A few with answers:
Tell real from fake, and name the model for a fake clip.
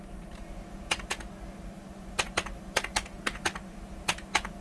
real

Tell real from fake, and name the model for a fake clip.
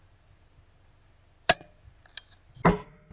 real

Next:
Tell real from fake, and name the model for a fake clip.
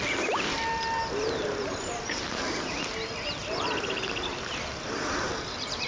real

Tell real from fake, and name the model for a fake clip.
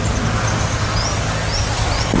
real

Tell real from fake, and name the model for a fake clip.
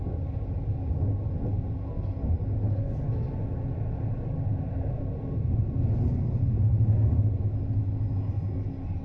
real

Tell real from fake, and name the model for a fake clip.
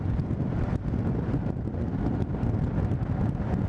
real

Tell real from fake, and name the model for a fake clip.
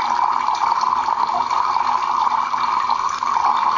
real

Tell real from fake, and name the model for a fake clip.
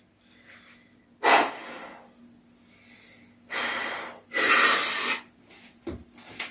real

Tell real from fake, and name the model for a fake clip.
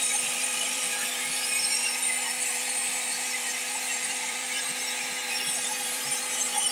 fake, vocoder, BigVGAN v2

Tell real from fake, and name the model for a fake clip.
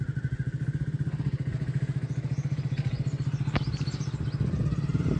real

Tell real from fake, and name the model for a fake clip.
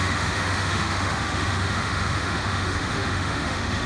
fake, autoencoder, DAC-VAE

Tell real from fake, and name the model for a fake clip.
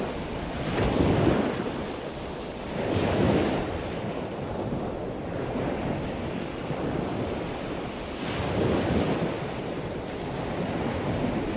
real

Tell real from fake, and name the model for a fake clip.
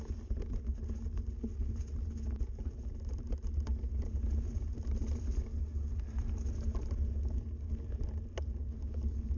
real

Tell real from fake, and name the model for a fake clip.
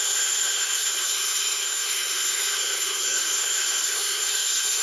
fake, codec, SNAC